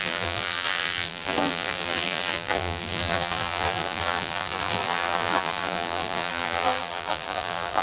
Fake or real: fake